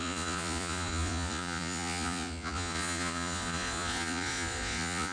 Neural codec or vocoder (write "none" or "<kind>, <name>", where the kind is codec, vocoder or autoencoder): vocoder, Vocos